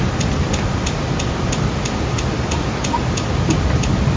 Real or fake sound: real